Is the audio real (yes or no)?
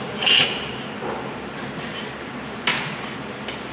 yes